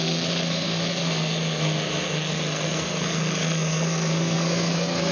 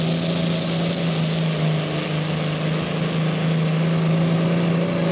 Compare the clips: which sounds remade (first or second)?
first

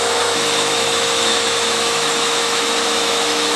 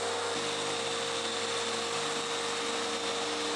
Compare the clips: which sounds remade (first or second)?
first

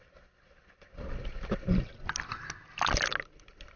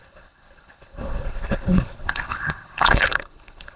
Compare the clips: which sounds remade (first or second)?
second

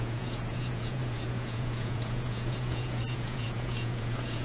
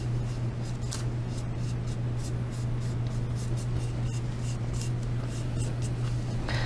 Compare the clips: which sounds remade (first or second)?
first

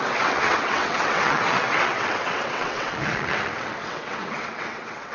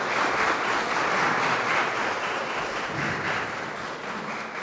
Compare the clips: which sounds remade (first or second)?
first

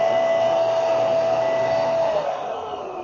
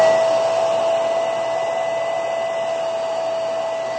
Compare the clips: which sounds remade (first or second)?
first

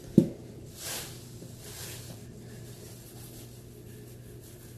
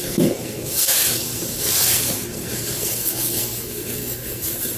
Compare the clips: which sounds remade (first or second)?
second